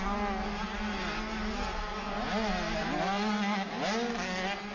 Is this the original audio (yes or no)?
yes